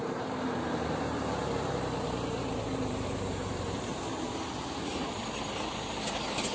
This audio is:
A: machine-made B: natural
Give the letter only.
A